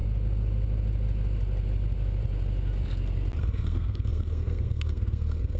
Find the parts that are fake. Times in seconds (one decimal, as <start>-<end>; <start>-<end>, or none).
3.4-5.6